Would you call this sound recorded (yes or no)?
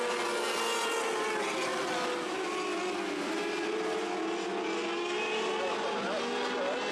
yes